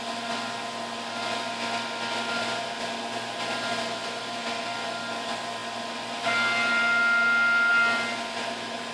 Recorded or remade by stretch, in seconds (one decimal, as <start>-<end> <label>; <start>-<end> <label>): 0.0-8.9 recorded